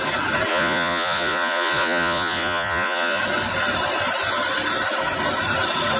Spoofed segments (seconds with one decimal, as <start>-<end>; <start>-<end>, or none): 0.5-3.2

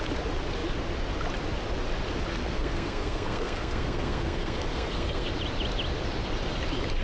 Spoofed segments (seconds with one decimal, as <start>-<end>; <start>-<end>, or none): 2.3-5.3

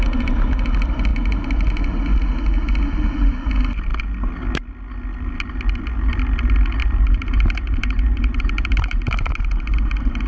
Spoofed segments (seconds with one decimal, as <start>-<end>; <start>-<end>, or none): 1.1-1.7; 6.8-10.3

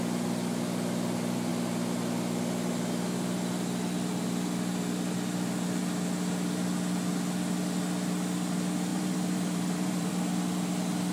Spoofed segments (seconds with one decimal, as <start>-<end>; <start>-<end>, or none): 8.9-10.1

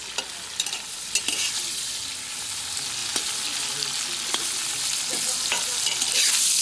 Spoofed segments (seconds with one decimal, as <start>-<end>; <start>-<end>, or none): none